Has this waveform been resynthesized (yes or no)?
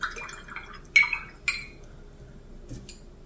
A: no